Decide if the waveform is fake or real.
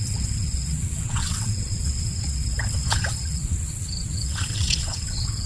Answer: fake